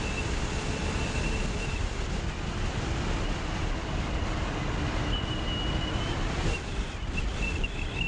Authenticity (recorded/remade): recorded